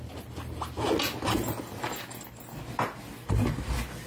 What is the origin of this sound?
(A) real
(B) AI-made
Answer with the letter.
A